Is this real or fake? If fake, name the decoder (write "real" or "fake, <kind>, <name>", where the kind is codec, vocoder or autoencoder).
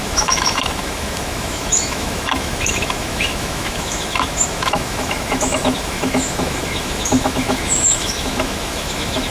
fake, autoencoder, DAC-VAE